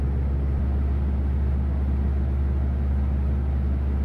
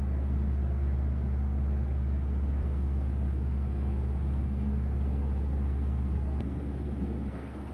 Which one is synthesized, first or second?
second